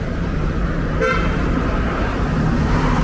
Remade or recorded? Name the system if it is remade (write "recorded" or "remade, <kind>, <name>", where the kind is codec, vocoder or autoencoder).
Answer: remade, vocoder, BigVGAN v2